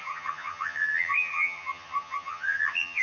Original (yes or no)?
no